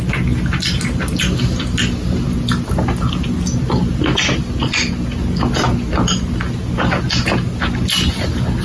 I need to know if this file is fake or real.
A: real